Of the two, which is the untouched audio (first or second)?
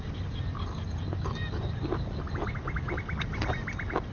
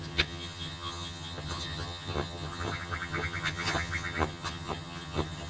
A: first